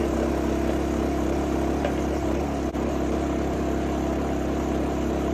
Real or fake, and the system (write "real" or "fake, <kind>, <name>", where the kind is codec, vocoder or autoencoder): real